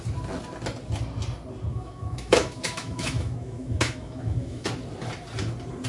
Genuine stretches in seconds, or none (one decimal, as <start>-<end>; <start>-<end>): 0.0-1.7; 4.7-5.9